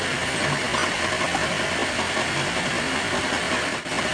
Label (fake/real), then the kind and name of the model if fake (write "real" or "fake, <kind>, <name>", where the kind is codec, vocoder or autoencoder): real